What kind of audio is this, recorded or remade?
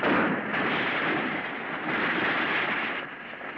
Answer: recorded